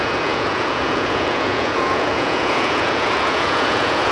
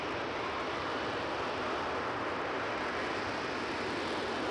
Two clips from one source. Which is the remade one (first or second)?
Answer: first